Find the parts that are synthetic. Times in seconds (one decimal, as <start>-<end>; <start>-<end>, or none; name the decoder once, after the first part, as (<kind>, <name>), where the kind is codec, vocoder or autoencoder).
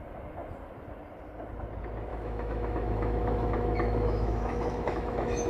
2.1-5.5 (autoencoder, DAC-VAE)